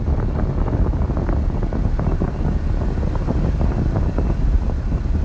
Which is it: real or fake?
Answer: real